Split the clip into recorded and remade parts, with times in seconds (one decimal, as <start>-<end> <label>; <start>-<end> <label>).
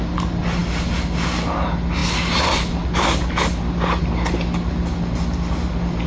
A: 0.0-6.1 recorded